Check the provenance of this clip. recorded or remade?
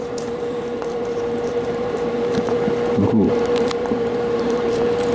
remade